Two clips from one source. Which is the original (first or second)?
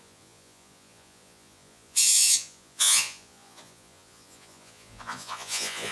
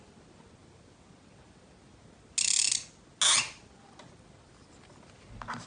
second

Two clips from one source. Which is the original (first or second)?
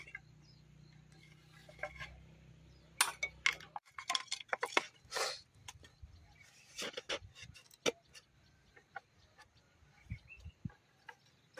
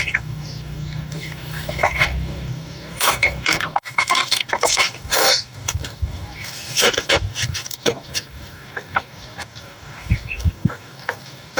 first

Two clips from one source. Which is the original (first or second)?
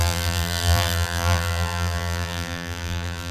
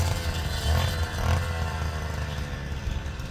second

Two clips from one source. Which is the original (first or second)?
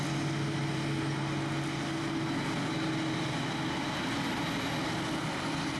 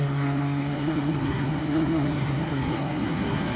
first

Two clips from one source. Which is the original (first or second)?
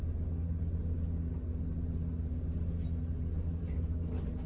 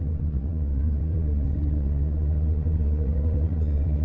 first